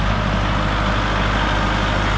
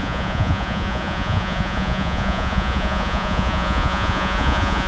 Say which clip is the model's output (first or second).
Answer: second